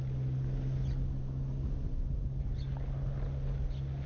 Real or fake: real